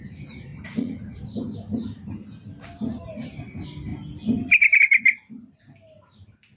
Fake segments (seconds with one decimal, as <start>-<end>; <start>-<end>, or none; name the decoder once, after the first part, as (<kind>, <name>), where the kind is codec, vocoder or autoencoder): 0.5-1.2 (vocoder, Vocos)